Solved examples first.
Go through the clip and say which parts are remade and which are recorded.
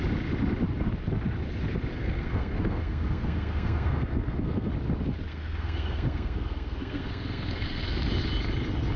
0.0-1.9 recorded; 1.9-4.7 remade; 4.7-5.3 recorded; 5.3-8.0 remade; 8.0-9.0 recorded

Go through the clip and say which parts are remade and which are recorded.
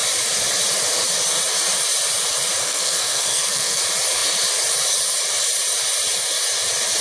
0.0-2.6 recorded; 2.6-3.8 remade; 3.8-7.0 recorded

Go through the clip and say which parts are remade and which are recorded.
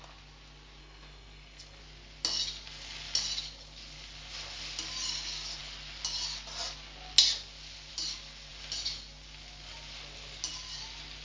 0.0-0.8 recorded; 0.8-1.8 remade; 1.8-11.2 recorded